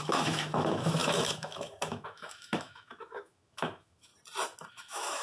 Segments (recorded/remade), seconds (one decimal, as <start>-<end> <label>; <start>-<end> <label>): 0.0-4.1 remade; 4.1-4.7 recorded; 4.7-5.2 remade